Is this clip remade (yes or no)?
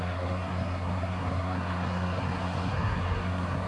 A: yes